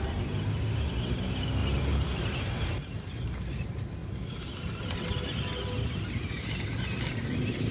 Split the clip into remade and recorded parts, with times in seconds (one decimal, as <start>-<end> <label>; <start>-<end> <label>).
0.0-7.7 recorded